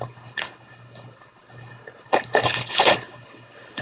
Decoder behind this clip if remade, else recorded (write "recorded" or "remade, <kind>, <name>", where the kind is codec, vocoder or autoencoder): remade, codec, HILCodec